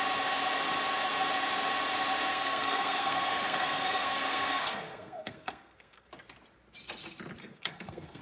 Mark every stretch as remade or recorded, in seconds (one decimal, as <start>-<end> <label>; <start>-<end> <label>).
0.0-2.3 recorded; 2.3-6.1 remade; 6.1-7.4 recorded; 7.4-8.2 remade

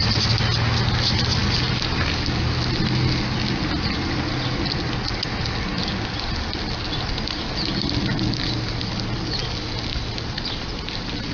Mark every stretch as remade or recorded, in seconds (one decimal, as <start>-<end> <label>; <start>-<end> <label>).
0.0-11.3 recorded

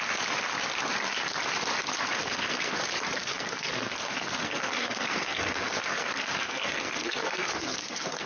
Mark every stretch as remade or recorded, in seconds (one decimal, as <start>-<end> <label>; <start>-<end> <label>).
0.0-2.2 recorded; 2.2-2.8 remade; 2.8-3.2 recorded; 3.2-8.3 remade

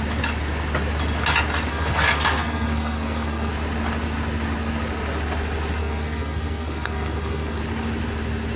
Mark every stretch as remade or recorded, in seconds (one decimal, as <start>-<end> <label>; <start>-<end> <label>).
0.0-1.7 recorded; 1.7-3.5 remade; 3.5-5.8 recorded; 5.8-7.6 remade; 7.6-8.6 recorded

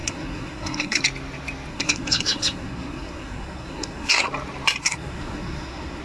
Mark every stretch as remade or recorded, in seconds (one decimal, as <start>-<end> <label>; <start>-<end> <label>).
0.0-1.0 remade; 1.0-1.7 recorded; 1.7-4.3 remade; 4.3-4.8 recorded; 4.8-6.0 remade

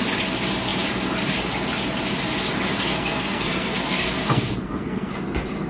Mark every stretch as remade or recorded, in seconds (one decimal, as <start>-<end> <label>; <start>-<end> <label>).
0.0-2.7 recorded; 2.7-5.1 remade; 5.1-5.7 recorded

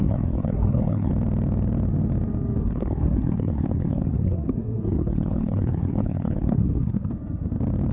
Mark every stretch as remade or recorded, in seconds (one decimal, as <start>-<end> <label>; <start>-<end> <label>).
0.0-1.1 remade; 1.1-2.6 recorded; 2.6-7.1 remade; 7.1-7.9 recorded